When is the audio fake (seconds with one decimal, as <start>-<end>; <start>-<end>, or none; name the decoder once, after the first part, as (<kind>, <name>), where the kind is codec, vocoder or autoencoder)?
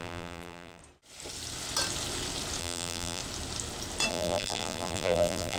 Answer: 0.0-0.8 (vocoder, BigVGAN v2); 2.6-3.2; 4.1-5.6